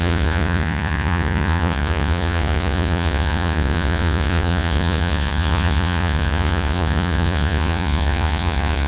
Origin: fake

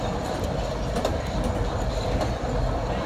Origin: fake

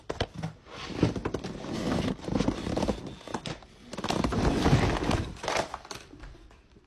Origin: real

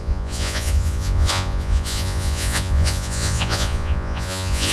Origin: fake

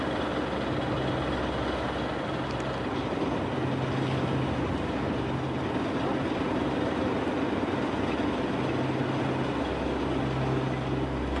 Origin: real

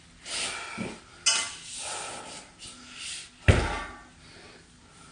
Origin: real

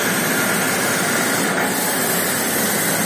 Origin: fake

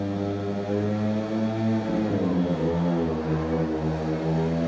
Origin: real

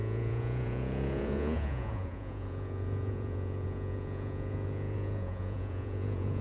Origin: fake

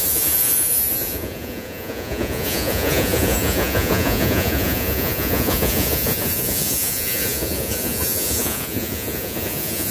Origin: fake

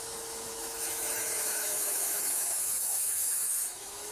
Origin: fake